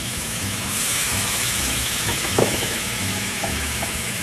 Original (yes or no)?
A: no